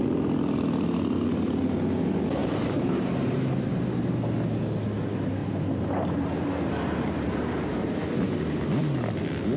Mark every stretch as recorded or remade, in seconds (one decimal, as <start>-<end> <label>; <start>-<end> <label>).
0.0-2.4 recorded; 2.4-4.1 remade; 4.1-5.4 recorded; 5.4-8.4 remade; 8.4-9.6 recorded